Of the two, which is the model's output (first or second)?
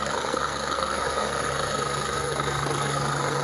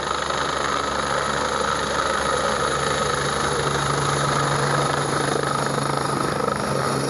first